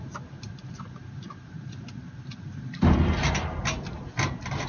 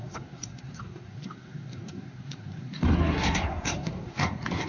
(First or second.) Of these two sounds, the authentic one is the first